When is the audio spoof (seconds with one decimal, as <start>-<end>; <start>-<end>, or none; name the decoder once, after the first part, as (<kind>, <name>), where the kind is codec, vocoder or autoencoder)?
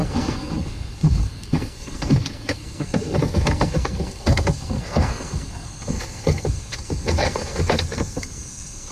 0.0-8.9 (codec, SNAC)